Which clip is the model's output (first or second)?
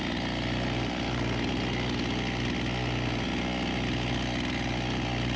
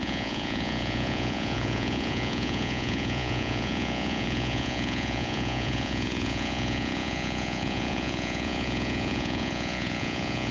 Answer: second